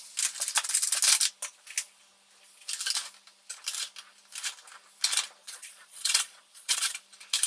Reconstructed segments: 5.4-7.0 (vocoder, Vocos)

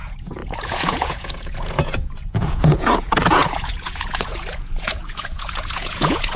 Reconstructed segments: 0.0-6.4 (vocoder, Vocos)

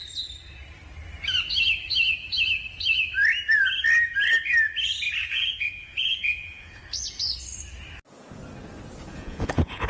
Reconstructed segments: 5.2-6.8 (vocoder, Vocos); 9.1-9.9

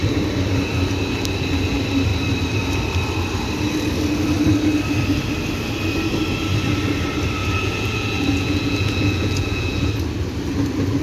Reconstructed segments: 7.4-9.9 (vocoder, Vocos)